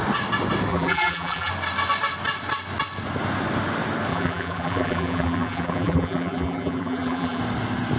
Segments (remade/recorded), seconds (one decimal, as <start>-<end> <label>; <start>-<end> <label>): 0.0-0.7 recorded; 0.7-1.5 remade; 1.5-4.1 recorded; 4.1-7.4 remade; 7.4-8.0 recorded